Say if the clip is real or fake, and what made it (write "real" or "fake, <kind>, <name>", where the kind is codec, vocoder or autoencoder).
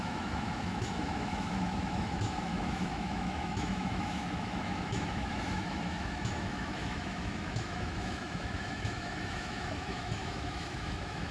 fake, autoencoder, DAC-VAE